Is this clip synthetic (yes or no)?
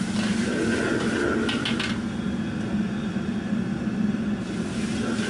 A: no